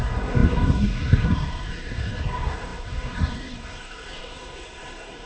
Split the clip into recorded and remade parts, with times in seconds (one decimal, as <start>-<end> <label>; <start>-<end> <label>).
0.0-5.3 remade